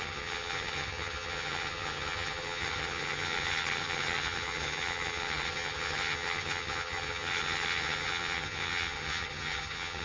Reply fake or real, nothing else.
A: fake